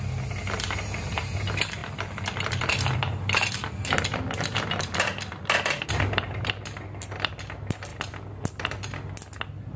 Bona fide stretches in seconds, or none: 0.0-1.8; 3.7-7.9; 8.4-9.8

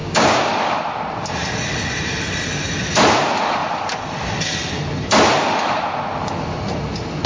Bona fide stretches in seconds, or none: 0.5-7.3

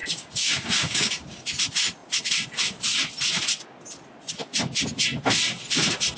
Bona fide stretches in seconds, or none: 1.4-6.2

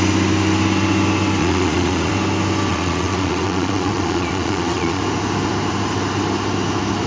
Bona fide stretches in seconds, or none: 0.0-1.4; 2.1-2.7; 5.0-7.1

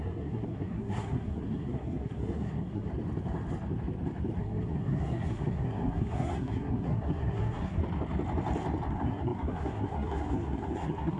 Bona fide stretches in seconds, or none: 2.9-4.4; 7.8-8.9

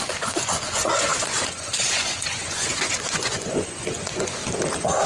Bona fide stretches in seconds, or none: 4.4-5.1

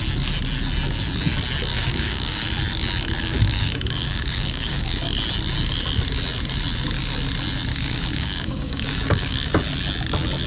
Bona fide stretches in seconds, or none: 0.0-1.7; 2.5-3.2; 5.0-7.7; 9.5-10.5

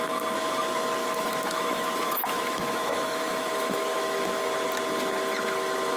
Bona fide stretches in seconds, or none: 0.0-1.0; 4.5-6.0